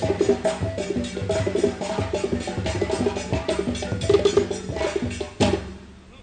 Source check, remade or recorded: recorded